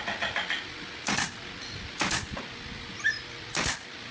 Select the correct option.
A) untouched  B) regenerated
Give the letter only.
A